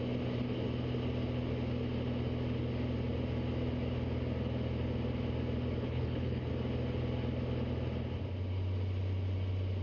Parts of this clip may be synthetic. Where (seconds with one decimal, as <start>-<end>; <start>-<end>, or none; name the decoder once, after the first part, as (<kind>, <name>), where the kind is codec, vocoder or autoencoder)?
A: 5.8-6.5 (codec, HILCodec)